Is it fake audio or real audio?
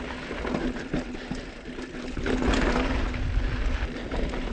real